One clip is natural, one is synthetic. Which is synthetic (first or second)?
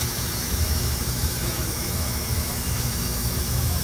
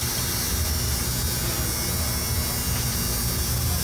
first